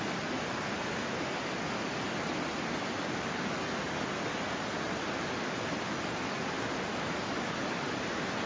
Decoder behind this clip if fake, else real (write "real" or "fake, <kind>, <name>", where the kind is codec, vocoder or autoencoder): real